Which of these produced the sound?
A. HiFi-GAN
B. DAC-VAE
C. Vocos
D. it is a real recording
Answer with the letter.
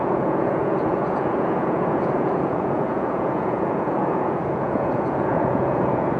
C